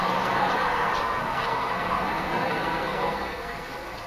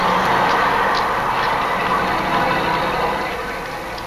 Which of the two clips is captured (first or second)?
second